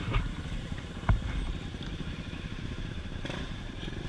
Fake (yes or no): yes